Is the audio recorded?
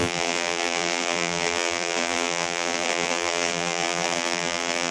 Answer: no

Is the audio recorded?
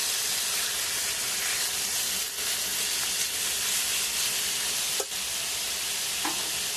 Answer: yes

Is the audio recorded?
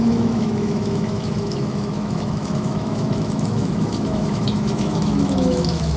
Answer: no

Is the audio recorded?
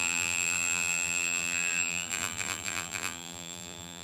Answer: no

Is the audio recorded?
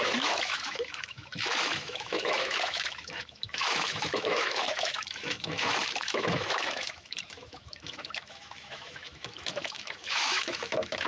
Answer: no